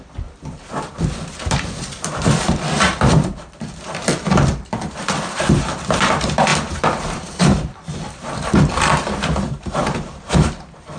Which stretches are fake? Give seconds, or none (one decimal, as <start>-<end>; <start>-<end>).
0.0-11.0